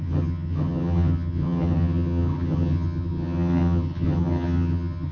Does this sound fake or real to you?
fake